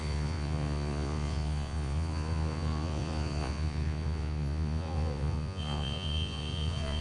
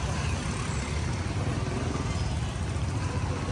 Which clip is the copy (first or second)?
first